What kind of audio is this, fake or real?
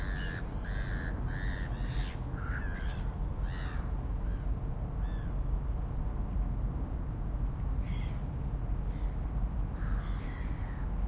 real